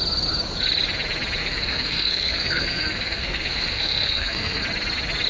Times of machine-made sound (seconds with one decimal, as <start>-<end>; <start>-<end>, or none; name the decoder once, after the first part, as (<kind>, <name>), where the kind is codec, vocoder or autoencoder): 1.4-4.6 (codec, SNAC)